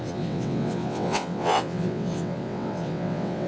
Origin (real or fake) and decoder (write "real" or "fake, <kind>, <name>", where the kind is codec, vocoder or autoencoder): fake, vocoder, WaveNeXt